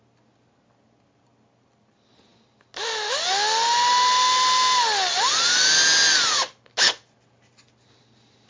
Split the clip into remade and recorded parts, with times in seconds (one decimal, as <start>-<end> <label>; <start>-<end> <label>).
0.0-8.5 recorded